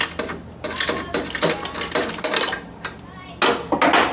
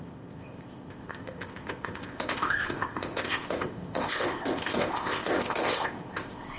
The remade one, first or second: second